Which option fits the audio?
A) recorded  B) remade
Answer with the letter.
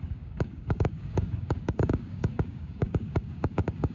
B